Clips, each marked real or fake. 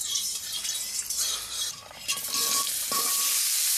fake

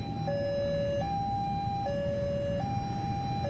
real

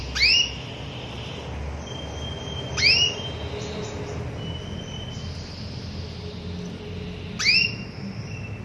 real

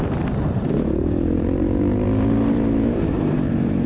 fake